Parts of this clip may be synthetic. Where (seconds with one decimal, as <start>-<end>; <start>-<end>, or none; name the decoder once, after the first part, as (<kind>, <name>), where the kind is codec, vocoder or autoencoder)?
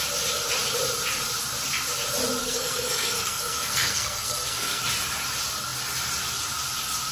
2.4-4.8 (codec, SNAC)